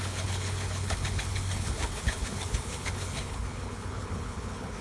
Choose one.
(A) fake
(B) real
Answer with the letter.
A